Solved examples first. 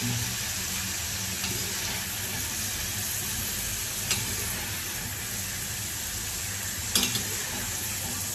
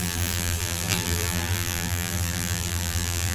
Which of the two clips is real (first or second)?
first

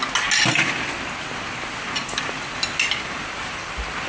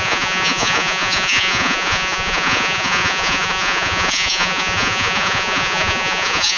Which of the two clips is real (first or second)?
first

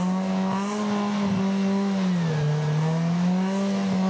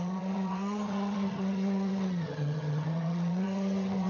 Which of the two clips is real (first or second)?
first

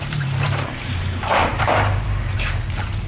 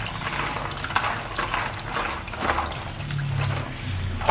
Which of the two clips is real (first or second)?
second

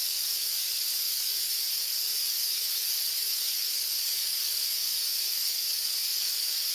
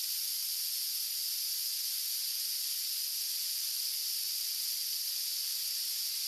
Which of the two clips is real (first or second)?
second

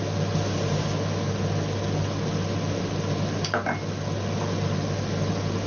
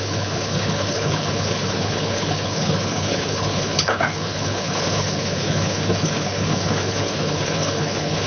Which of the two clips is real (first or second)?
first